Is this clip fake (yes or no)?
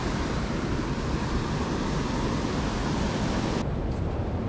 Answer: no